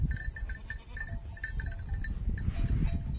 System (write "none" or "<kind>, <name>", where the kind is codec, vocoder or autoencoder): none